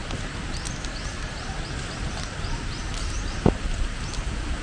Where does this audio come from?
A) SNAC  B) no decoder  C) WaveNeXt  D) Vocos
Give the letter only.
B